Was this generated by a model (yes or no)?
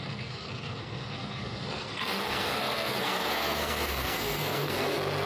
yes